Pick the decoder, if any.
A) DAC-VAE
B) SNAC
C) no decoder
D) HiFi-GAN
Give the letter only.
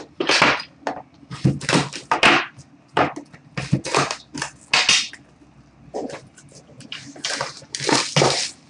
C